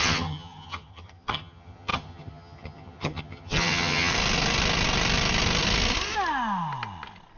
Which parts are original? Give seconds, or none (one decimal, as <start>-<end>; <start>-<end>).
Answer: 4.1-7.4